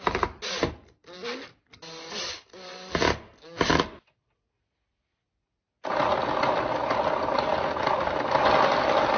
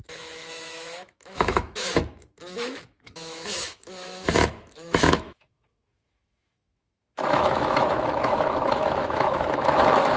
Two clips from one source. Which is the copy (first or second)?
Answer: second